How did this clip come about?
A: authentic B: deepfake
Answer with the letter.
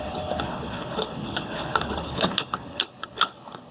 B